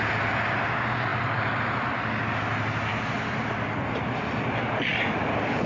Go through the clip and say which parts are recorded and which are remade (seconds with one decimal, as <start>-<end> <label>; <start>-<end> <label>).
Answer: 0.0-5.7 recorded